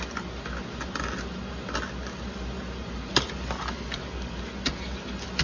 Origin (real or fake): real